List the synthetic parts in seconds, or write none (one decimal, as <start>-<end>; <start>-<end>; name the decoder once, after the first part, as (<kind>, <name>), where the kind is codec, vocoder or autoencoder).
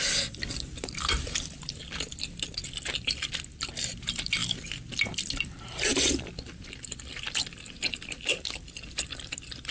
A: 0.0-4.4 (vocoder, BigVGAN v2); 5.0-9.7